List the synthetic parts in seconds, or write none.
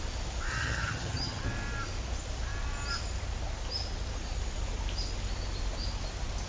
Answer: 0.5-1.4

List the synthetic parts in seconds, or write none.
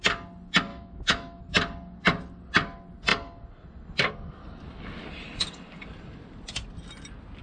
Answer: 0.7-1.4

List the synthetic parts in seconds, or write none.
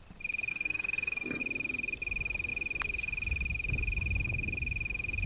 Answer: 0.5-1.4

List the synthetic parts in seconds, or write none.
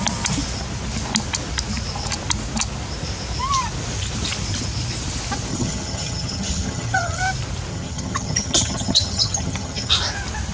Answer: 5.5-7.2; 7.7-9.9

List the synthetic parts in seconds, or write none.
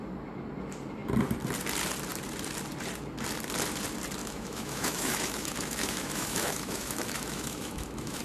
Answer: 4.2-8.2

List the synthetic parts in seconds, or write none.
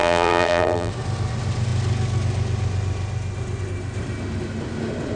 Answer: 0.0-0.9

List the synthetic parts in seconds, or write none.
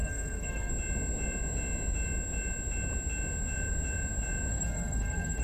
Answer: 0.0-0.7; 4.5-5.4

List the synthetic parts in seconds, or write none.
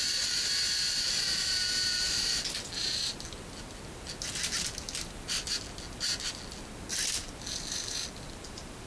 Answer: none